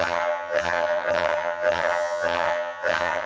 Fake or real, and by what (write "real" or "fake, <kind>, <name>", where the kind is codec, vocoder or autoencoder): fake, vocoder, HiFi-GAN